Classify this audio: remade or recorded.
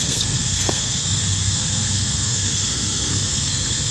remade